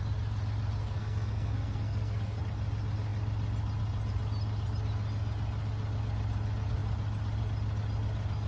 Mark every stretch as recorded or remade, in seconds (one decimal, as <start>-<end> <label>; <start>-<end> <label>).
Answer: 0.0-0.8 recorded; 0.8-2.4 remade; 2.4-8.5 recorded